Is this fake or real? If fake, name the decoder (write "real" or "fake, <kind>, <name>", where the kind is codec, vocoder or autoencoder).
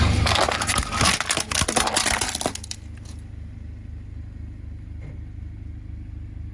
real